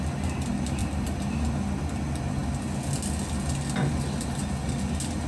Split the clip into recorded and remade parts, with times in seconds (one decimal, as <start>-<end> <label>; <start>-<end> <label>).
0.0-5.3 recorded